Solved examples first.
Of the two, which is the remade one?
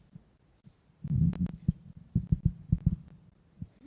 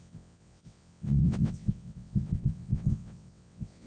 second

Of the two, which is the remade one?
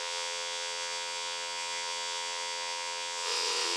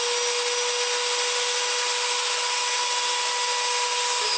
first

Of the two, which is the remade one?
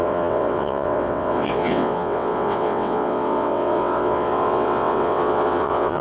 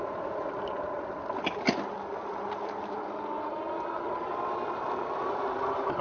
first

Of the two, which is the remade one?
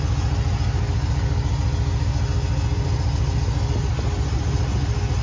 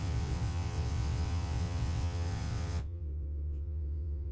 second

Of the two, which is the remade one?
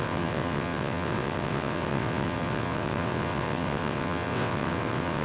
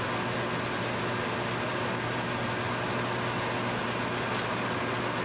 first